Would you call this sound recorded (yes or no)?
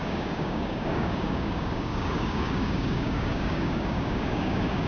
no